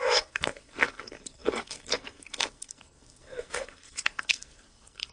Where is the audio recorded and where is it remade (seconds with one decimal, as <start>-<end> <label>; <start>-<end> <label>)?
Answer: 0.0-5.1 remade